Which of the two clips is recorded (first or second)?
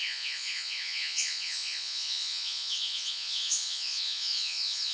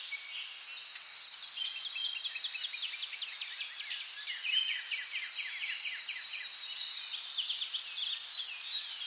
second